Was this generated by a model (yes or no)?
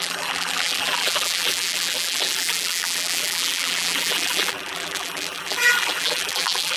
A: yes